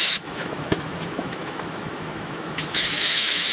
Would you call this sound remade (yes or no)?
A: yes